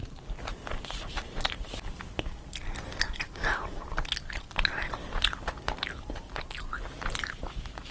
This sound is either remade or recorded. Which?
recorded